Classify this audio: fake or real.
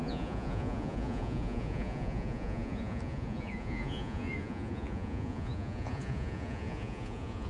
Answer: fake